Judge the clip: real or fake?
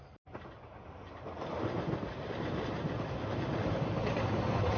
fake